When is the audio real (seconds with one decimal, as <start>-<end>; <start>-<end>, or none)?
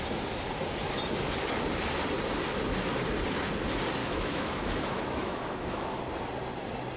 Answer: 0.0-4.0; 6.0-7.0